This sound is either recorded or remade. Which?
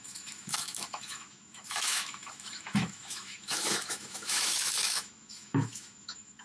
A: remade